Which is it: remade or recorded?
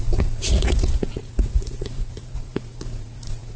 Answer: remade